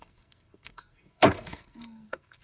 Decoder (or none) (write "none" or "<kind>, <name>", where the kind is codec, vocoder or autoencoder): codec, SNAC